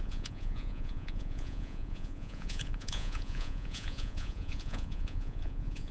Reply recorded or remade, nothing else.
remade